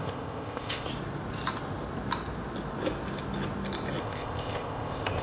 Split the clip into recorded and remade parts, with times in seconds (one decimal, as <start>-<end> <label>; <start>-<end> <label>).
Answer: 0.0-0.9 remade; 0.9-4.0 recorded; 4.0-5.2 remade